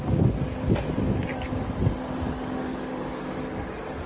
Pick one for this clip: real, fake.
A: real